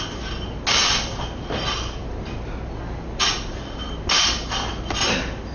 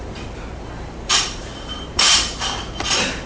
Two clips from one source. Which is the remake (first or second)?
second